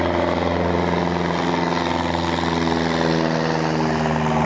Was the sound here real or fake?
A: real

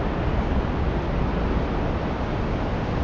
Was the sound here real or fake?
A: real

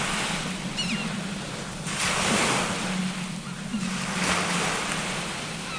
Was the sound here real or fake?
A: real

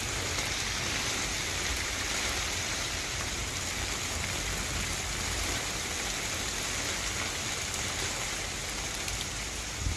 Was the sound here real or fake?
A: real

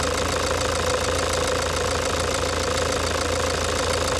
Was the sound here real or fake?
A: real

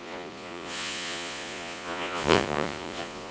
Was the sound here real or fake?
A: fake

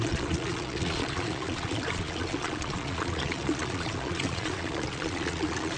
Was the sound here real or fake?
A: fake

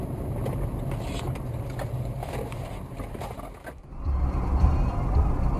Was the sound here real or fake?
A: real